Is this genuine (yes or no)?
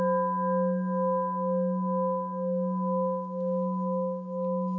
yes